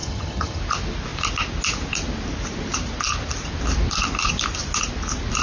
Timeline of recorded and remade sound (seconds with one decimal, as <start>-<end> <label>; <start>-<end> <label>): 0.0-0.6 remade; 0.6-5.4 recorded